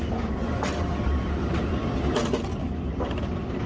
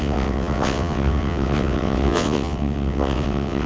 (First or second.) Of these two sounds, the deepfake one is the second